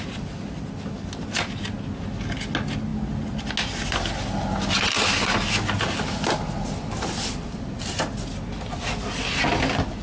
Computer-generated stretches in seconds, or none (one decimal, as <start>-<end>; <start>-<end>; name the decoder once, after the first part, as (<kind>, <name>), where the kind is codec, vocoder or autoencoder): none

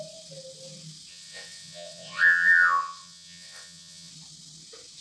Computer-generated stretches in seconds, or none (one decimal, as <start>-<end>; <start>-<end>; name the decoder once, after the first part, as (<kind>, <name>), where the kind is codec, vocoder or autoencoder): 1.1-4.1 (vocoder, WaveNeXt)